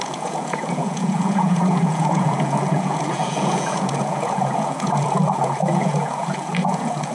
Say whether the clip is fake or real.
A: fake